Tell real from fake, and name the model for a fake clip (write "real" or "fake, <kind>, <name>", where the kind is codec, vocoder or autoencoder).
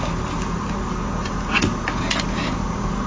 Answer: real